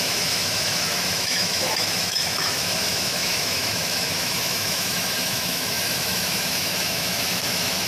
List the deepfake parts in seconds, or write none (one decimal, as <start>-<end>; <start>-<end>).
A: 0.0-7.9